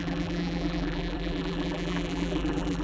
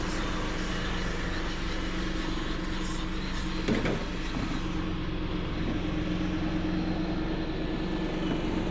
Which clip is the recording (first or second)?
second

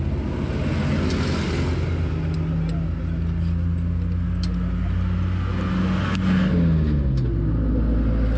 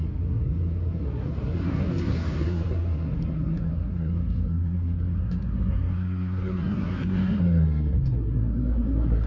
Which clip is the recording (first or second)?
first